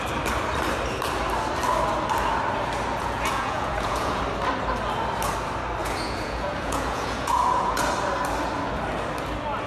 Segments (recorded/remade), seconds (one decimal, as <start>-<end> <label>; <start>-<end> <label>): 0.0-3.0 recorded; 3.0-4.2 remade; 4.2-5.8 recorded; 5.8-7.8 remade; 7.8-9.7 recorded

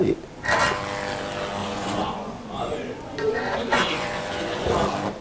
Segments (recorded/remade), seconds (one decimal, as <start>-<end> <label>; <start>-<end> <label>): 0.0-1.6 recorded; 1.6-4.7 remade; 4.7-5.2 recorded

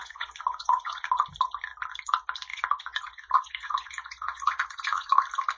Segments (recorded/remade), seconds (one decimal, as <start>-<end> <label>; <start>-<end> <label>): 0.0-1.1 remade; 1.1-2.5 recorded; 2.5-5.1 remade; 5.1-5.6 recorded

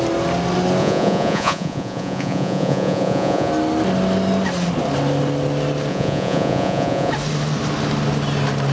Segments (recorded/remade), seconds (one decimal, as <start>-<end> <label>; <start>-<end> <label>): 0.0-0.8 recorded; 0.8-3.5 remade; 3.5-5.9 recorded; 5.9-7.1 remade; 7.1-8.7 recorded

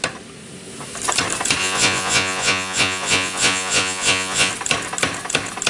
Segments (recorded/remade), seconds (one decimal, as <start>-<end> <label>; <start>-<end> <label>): 0.0-1.6 recorded; 1.6-4.5 remade; 4.5-5.7 recorded

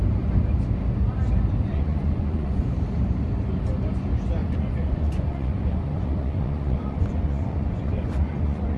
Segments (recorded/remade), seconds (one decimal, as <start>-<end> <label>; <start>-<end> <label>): 0.0-1.7 recorded; 1.7-2.6 remade; 2.6-4.4 recorded; 4.4-8.8 remade

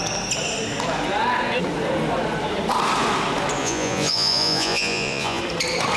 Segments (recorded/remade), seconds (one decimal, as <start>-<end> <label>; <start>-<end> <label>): 0.0-3.6 recorded; 3.6-5.4 remade; 5.4-6.0 recorded